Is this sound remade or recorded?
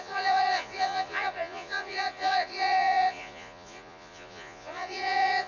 remade